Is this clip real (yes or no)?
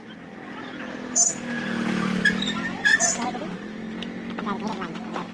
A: no